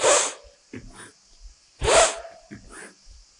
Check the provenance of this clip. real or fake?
real